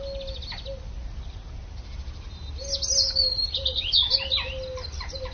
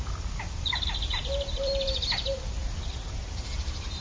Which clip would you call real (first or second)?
first